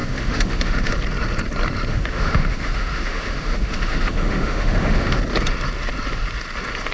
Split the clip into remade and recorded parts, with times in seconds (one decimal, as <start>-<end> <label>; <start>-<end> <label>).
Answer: 0.0-0.9 remade; 0.9-1.9 recorded; 1.9-5.2 remade; 5.2-6.9 recorded